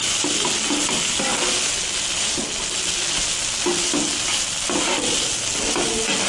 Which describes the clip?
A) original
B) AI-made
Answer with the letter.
A